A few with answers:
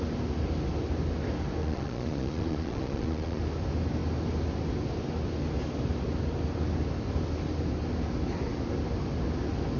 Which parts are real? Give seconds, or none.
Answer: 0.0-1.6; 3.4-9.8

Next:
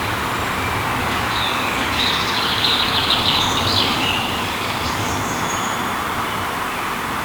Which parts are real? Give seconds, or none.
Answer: 0.0-1.0; 5.1-7.2

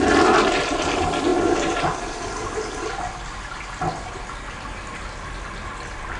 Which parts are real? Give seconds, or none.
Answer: 0.0-6.2

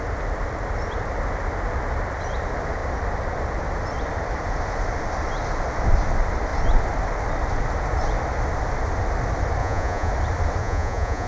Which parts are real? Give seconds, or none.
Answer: 0.0-9.6; 10.1-10.6